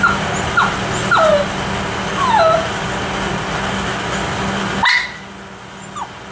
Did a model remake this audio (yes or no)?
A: no